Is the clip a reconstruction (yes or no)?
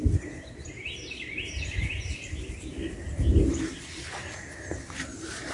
no